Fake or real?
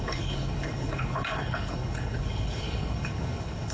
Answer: fake